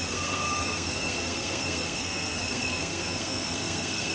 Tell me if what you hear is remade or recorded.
remade